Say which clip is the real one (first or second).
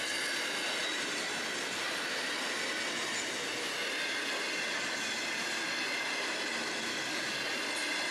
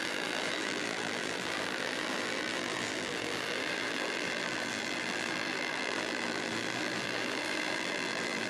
first